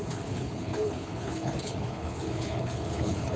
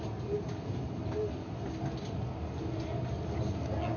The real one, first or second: second